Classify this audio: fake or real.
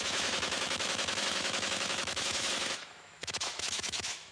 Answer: fake